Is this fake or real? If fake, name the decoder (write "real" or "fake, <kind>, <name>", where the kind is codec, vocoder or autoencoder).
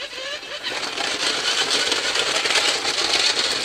real